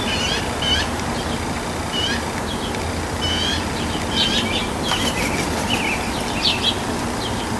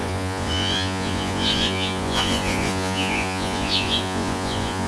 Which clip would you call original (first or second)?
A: first